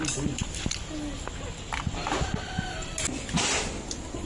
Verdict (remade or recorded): recorded